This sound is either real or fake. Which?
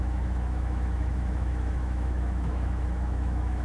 fake